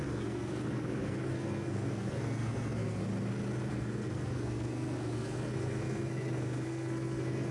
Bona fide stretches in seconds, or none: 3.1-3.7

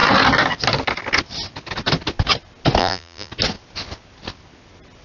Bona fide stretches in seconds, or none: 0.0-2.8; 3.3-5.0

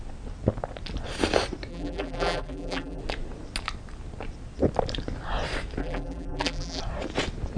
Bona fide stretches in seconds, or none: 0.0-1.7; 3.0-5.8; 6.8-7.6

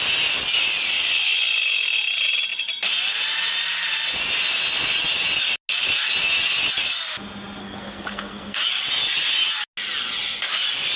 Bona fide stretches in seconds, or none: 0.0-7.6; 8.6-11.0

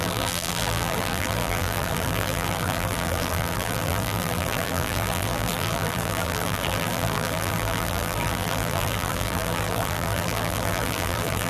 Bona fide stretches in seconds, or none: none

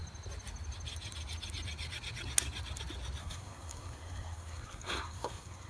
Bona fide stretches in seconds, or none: 0.0-3.2

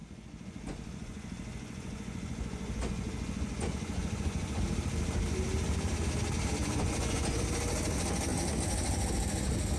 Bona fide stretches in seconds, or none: 4.6-6.6; 7.4-9.8